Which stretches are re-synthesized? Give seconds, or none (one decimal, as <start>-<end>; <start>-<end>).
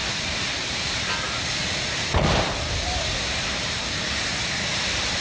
0.0-1.1; 1.6-4.7